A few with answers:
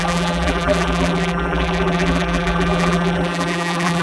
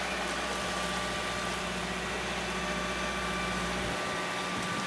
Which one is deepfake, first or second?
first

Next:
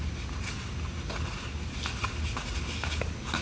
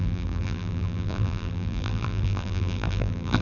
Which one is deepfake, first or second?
second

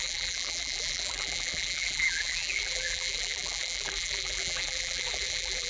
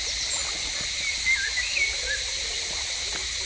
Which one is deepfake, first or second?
first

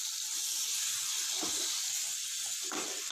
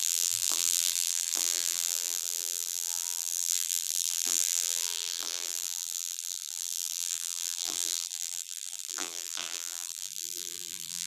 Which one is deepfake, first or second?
second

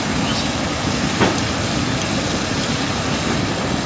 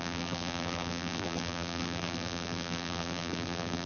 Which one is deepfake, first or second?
second